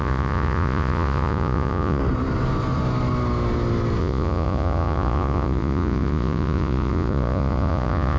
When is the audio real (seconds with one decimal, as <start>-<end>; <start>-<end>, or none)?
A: 2.0-4.0